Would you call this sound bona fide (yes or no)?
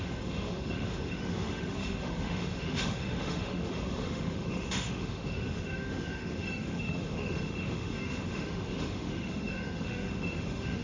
no